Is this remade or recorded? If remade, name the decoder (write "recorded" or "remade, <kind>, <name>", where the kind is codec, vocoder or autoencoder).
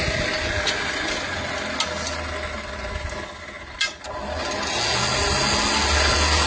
recorded